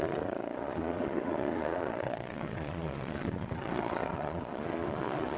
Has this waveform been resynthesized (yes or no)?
yes